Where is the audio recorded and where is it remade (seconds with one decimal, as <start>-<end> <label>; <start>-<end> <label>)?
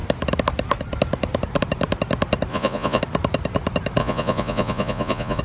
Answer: 0.0-2.5 recorded; 2.5-3.0 remade; 3.0-4.0 recorded; 4.0-5.4 remade